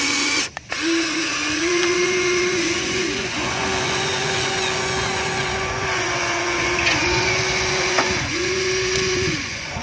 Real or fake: fake